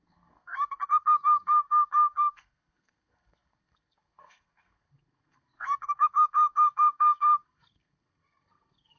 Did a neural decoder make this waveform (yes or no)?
yes